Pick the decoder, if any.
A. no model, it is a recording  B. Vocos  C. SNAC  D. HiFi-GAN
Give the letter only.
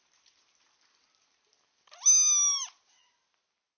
A